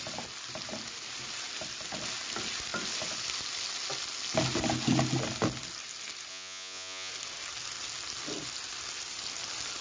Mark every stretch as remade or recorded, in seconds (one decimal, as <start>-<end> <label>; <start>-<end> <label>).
0.0-6.3 recorded; 6.3-7.1 remade; 7.1-9.8 recorded